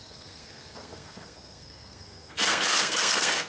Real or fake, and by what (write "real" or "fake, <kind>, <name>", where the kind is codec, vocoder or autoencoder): fake, codec, SNAC